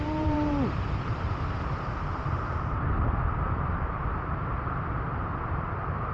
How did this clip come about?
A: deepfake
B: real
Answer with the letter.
A